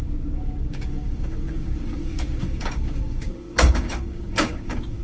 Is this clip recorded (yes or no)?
no